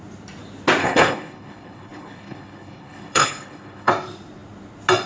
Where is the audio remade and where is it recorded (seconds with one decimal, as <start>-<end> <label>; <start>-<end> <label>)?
0.0-0.8 recorded; 0.8-3.9 remade; 3.9-5.1 recorded